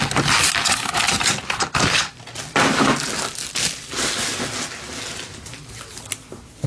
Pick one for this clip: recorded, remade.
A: recorded